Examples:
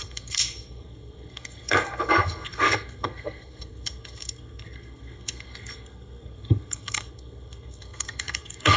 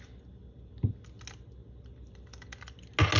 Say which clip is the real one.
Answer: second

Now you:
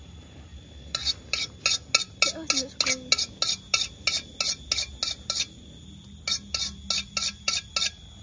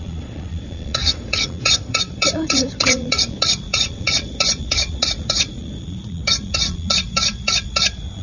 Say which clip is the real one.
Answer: first